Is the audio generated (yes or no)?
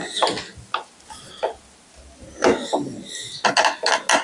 no